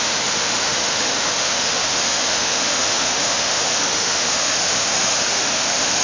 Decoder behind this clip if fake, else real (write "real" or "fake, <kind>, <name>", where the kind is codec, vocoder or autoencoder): fake, autoencoder, DAC-VAE